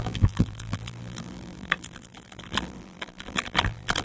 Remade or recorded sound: remade